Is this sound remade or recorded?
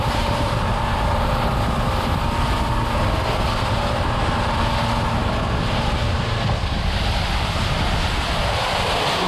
recorded